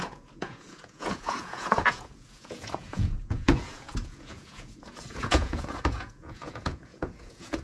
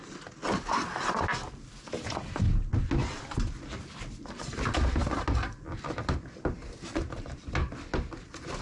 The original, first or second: second